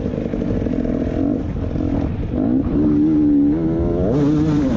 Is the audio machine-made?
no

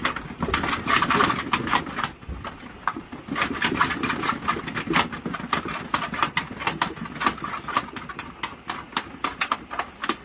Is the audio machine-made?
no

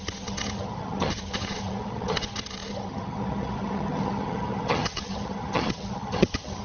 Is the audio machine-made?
yes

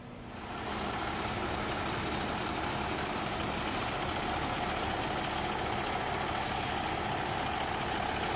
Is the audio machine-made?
no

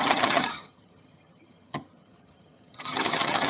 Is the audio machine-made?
yes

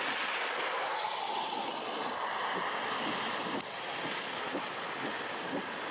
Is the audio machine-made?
no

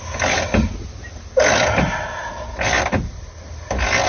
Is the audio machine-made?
no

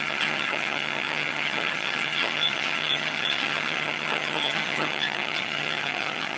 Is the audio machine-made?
yes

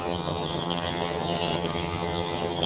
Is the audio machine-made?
yes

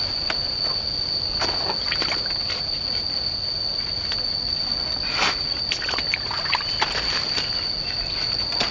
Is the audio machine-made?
no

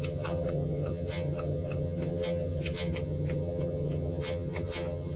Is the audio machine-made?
yes